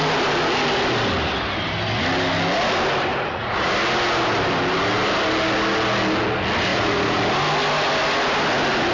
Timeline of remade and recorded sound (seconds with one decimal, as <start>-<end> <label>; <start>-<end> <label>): 0.0-3.1 recorded; 3.1-3.7 remade; 3.7-6.7 recorded; 6.7-7.2 remade; 7.2-8.9 recorded